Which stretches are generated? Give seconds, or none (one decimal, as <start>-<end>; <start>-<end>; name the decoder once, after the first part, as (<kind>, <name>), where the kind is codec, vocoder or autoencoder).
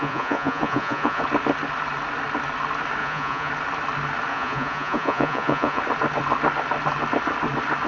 0.0-1.2 (vocoder, Vocos); 3.0-3.5; 4.3-5.8